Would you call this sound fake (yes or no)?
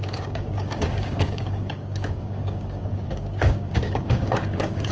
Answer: yes